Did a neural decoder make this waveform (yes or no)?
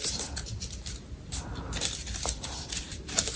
no